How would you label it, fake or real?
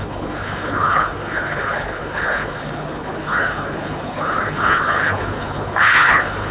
fake